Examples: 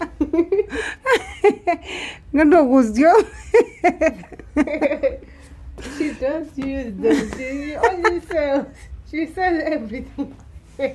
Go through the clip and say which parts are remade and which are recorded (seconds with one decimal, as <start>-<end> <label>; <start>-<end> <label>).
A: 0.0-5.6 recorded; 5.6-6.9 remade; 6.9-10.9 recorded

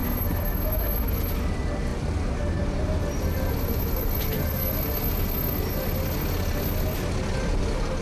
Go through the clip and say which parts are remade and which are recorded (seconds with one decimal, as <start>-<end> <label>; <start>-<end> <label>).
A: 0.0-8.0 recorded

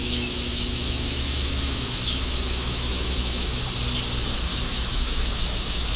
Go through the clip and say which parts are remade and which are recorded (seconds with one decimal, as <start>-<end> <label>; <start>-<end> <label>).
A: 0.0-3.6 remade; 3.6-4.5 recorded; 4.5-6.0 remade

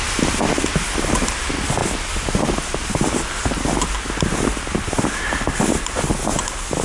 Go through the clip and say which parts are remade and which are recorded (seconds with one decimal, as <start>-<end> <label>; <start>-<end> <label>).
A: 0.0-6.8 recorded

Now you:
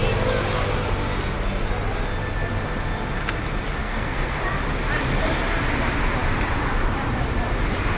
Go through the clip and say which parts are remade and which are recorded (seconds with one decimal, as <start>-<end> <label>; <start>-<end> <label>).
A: 0.0-3.8 recorded; 3.8-4.4 remade; 4.4-8.0 recorded

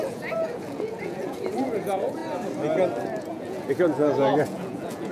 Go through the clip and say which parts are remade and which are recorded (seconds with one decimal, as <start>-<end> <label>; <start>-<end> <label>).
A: 0.0-2.2 remade; 2.2-3.2 recorded; 3.2-5.1 remade

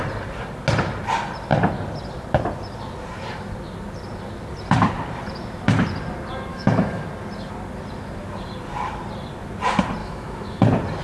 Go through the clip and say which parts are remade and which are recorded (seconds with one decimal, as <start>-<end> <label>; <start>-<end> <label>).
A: 0.0-6.5 recorded; 6.5-7.0 remade; 7.0-10.0 recorded; 10.0-10.6 remade; 10.6-11.0 recorded